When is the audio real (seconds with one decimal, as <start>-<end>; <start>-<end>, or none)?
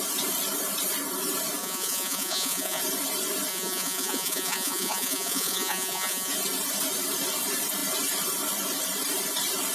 0.0-1.6; 2.8-3.5; 6.3-9.7